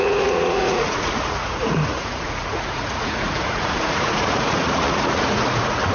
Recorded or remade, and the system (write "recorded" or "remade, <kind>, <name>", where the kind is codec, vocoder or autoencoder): remade, vocoder, Vocos